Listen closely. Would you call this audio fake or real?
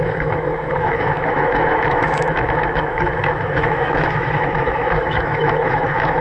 fake